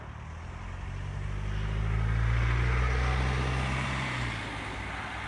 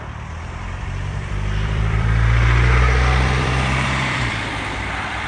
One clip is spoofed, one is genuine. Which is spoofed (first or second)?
second